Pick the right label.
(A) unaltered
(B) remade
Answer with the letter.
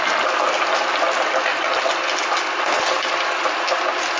A